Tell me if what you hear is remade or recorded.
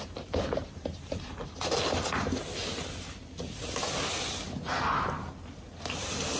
recorded